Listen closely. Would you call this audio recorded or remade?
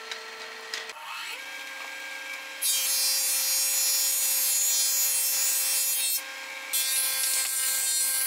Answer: recorded